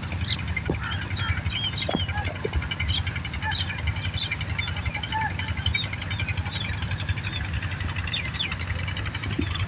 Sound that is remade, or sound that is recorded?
recorded